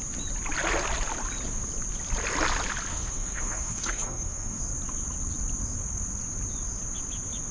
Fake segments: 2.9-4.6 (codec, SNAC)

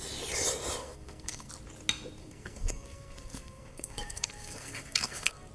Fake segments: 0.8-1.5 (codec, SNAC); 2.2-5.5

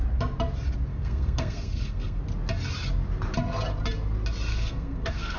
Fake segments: 0.9-2.2 (codec, SNAC); 4.5-5.4